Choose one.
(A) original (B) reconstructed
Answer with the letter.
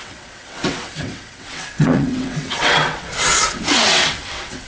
B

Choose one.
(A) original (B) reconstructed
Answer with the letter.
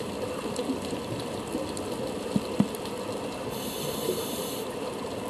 A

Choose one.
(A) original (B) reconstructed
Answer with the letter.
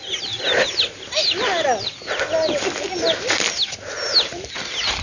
A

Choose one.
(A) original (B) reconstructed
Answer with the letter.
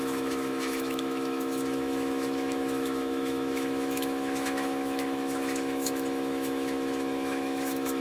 B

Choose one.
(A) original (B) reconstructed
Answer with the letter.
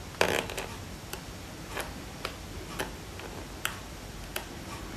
A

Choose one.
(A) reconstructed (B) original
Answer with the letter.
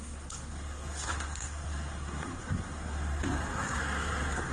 A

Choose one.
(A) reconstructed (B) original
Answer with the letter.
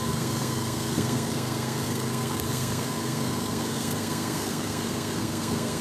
A